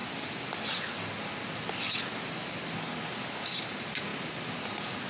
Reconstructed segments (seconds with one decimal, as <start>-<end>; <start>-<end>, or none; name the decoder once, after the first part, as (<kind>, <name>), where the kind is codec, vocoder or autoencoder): none